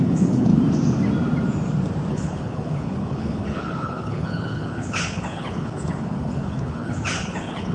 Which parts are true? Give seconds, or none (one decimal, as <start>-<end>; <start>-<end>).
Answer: 0.5-2.1